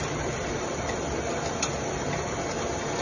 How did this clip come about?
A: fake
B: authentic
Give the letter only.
B